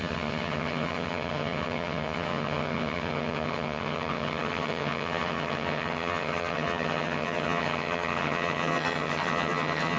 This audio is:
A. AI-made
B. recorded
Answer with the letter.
A